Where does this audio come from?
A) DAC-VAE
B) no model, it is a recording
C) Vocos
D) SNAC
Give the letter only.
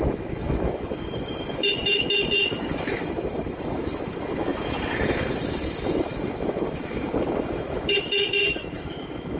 A